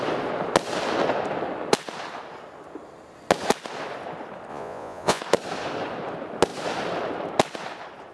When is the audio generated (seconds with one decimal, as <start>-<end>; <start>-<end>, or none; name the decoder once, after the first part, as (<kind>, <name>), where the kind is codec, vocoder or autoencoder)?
4.5-5.2 (vocoder, Vocos)